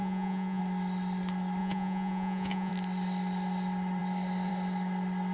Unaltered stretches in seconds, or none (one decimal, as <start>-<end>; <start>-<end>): 0.6-1.6; 2.7-5.3